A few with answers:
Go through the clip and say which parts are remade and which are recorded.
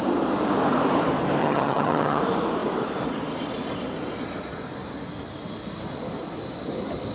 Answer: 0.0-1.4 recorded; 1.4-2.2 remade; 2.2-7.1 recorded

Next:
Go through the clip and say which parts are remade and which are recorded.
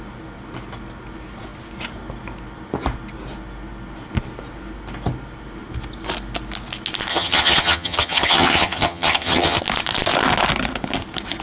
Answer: 0.0-7.1 recorded; 7.1-9.6 remade; 9.6-11.4 recorded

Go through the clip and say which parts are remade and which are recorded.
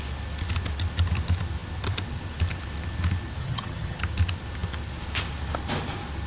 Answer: 0.0-3.4 recorded; 3.4-4.0 remade; 4.0-6.3 recorded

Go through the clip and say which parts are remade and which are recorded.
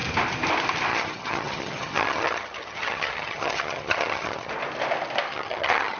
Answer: 0.0-0.9 recorded; 0.9-4.5 remade; 4.5-5.3 recorded; 5.3-6.0 remade